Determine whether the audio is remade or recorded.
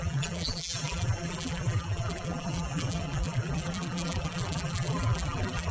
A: remade